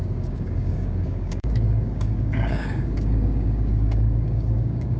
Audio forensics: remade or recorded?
remade